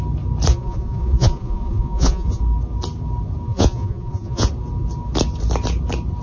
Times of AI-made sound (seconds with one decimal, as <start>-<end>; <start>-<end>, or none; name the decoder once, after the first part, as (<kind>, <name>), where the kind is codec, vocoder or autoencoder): 0.5-2.4 (vocoder, Vocos); 3.5-4.5